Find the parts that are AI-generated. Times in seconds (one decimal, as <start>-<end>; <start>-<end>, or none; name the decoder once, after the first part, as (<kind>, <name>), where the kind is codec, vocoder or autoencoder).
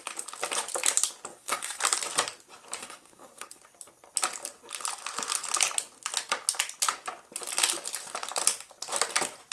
1.3-1.8 (codec, SNAC); 2.8-3.6